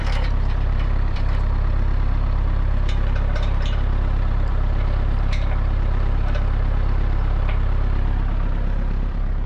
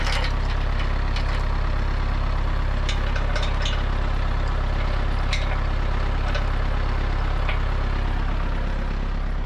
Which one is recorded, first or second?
second